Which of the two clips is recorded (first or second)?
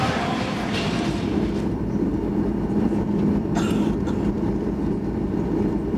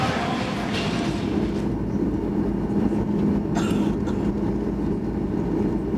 second